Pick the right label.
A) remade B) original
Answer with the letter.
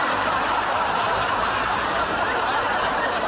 A